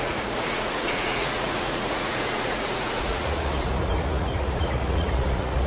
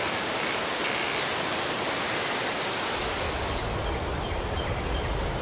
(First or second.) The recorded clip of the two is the second